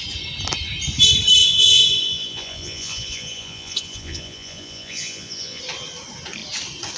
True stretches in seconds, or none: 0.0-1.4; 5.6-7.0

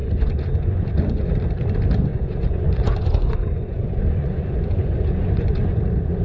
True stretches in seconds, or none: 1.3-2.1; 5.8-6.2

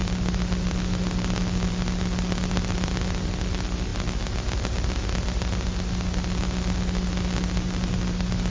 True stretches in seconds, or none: 0.0-8.5

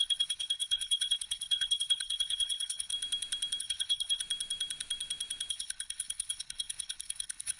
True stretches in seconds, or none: 2.9-3.6; 4.2-5.5

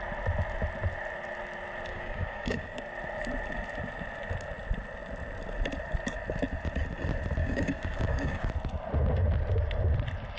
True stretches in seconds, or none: 0.0-1.9; 2.8-7.4; 8.5-10.4